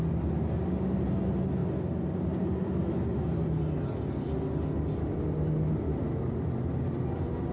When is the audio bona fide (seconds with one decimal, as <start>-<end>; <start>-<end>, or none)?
0.0-7.5